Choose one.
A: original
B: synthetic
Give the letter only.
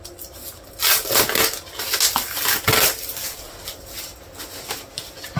A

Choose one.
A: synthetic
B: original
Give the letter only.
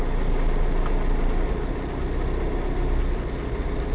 B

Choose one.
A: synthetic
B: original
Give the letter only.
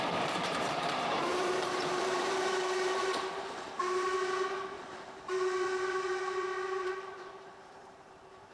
A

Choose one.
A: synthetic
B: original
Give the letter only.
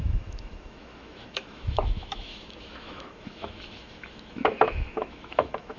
A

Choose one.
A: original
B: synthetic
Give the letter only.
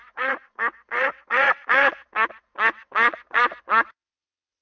B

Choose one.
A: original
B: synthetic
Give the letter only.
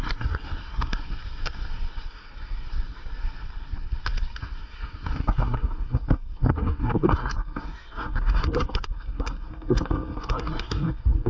B